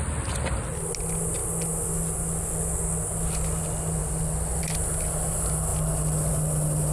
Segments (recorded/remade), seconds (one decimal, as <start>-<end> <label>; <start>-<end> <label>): 0.0-6.9 recorded